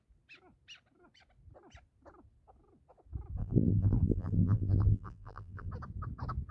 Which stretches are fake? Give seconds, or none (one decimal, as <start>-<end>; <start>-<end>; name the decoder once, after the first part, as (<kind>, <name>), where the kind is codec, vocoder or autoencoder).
3.4-5.7 (vocoder, BigVGAN v2)